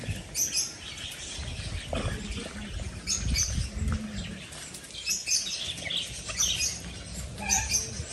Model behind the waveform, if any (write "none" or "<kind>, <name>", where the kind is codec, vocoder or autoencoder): none